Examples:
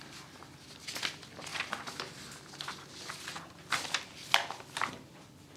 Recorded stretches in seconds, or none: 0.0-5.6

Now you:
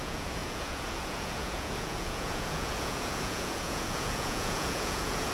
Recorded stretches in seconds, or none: none

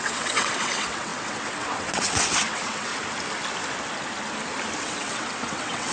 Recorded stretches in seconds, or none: 2.9-4.8

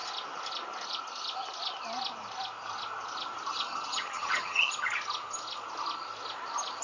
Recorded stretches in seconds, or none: 0.0-3.5; 4.7-6.8